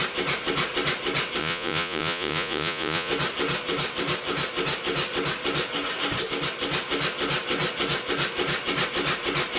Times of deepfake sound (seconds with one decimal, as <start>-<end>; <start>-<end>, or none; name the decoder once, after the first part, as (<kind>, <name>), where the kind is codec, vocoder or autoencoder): 1.4-3.1 (vocoder, Vocos)